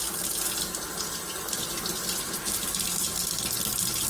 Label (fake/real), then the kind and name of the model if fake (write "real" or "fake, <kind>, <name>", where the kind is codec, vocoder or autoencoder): real